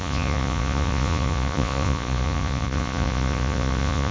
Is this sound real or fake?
fake